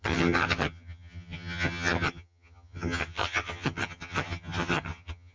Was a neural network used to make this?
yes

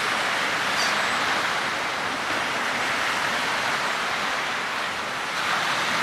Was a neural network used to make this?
no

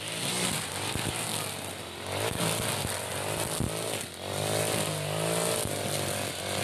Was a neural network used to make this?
no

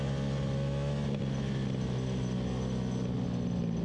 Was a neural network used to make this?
no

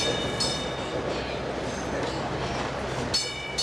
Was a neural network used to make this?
no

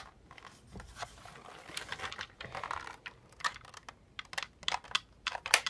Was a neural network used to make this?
no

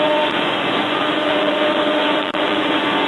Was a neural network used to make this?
yes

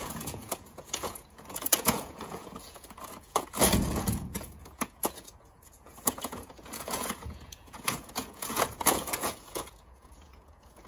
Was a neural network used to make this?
yes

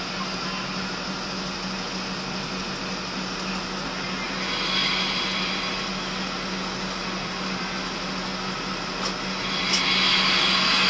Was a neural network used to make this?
no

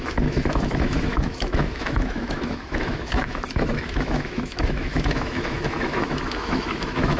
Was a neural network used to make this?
yes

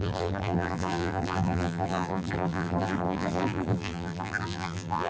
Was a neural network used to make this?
yes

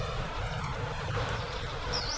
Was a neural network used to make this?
yes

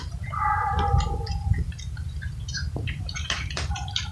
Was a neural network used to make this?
yes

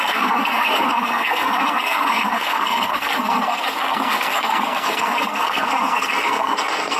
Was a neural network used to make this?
yes